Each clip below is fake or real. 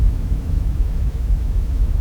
fake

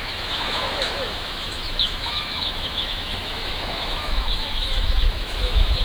fake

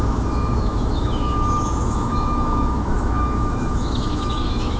fake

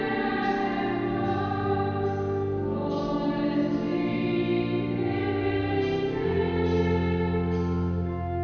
real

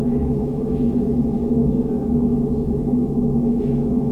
fake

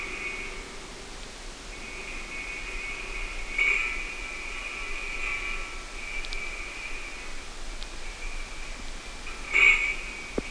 real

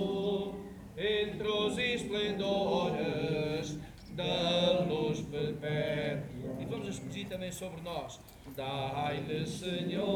real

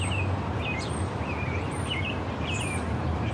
real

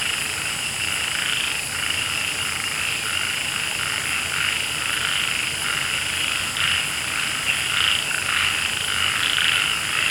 real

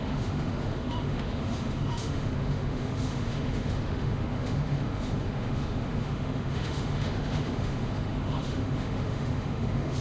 fake